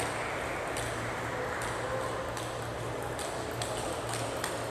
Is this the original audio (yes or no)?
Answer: yes